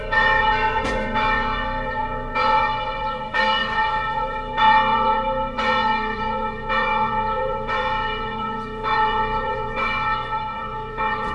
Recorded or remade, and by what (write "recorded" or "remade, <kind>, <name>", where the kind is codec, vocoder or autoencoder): remade, vocoder, Vocos